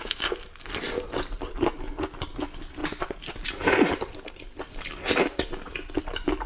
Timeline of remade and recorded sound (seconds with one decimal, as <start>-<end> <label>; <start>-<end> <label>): 0.0-6.5 recorded